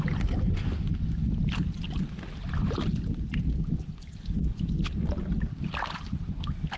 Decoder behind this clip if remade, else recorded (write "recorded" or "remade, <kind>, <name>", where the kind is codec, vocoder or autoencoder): recorded